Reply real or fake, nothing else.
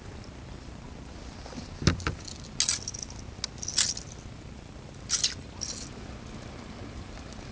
real